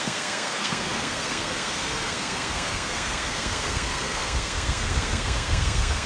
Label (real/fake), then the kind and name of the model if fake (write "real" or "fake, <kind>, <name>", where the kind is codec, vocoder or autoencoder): fake, codec, SNAC